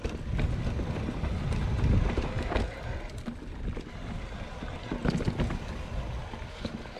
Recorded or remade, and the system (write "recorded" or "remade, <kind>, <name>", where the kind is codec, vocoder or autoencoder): recorded